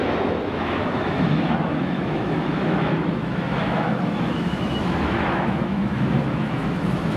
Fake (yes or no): yes